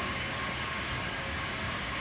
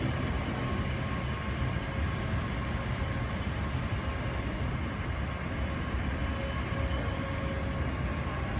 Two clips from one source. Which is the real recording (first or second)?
second